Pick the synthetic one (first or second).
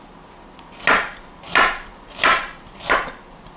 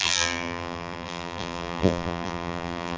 second